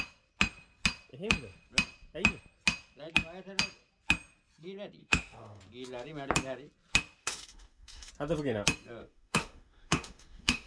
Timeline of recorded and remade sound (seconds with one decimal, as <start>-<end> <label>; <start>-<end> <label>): 0.0-5.0 recorded; 5.0-5.6 remade; 5.6-7.2 recorded; 7.2-8.1 remade; 8.1-9.0 recorded; 9.0-10.7 remade